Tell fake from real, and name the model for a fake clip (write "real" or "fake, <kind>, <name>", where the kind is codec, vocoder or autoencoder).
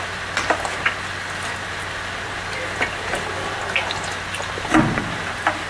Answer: real